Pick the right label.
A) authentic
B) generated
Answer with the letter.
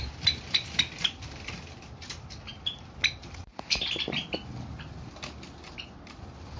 A